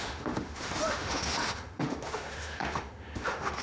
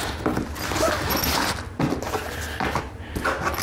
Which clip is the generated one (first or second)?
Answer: first